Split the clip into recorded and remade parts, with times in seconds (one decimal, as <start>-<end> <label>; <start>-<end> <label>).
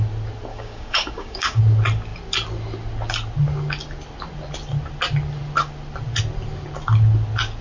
0.0-0.5 recorded; 0.5-1.6 remade; 1.6-7.6 recorded